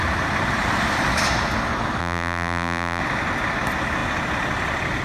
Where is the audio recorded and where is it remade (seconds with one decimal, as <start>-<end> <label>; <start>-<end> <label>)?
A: 0.0-2.0 recorded; 2.0-3.0 remade; 3.0-5.0 recorded